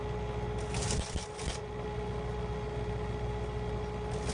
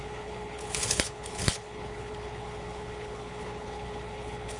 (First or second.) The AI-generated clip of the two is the second